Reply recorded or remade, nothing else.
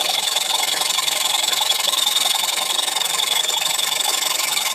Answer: remade